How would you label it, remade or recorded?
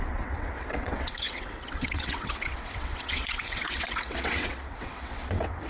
remade